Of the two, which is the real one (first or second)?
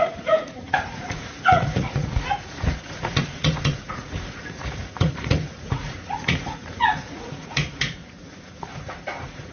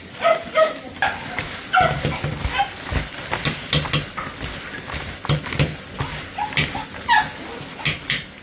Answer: second